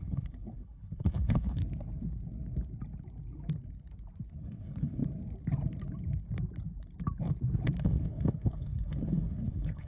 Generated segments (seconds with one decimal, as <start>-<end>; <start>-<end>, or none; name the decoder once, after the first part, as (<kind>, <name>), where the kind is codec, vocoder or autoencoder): 0.0-1.6 (codec, HILCodec); 4.3-5.0; 7.8-9.9